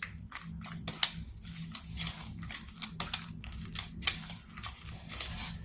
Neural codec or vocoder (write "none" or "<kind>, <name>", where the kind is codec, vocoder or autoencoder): none